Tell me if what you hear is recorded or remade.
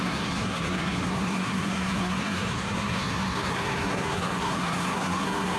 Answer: remade